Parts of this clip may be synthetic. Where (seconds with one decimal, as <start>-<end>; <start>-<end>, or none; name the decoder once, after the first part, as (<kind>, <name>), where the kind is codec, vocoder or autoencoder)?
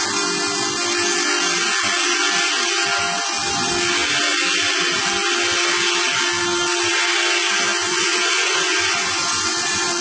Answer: 7.8-10.0 (vocoder, Vocos)